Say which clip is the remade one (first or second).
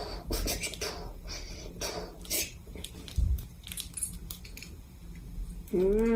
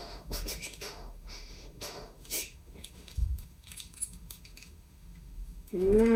second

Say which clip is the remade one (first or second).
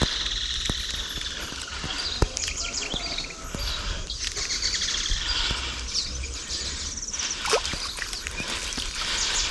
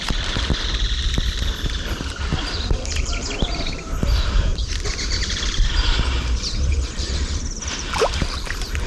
second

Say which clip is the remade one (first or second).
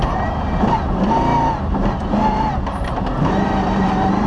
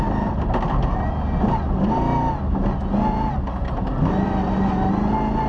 first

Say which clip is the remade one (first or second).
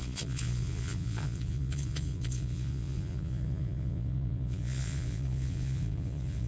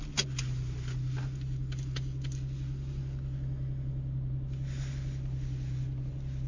first